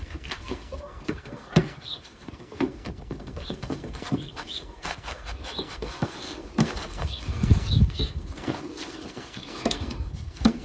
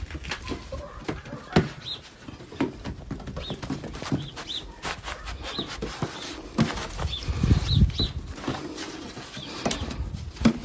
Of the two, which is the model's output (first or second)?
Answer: first